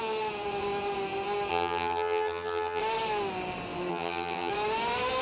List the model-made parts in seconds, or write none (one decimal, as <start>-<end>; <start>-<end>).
1.5-2.8; 3.9-4.5